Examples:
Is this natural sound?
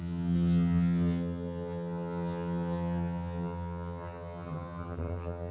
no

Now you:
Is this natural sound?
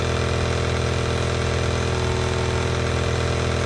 yes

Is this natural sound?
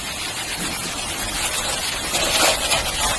yes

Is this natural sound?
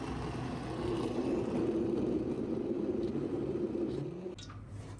yes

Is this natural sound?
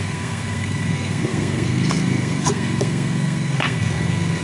no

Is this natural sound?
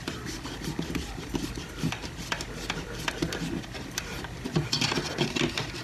no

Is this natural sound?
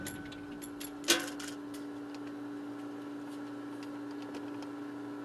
yes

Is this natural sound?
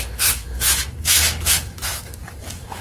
no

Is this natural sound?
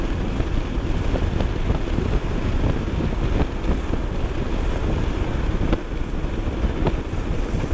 yes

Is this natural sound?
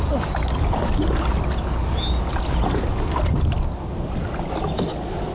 yes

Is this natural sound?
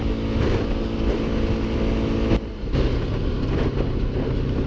yes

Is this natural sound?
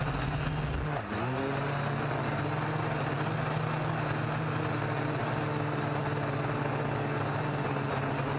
yes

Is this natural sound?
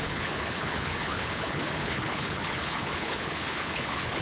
no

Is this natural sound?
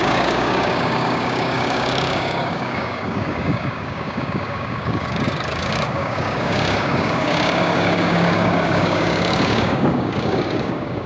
no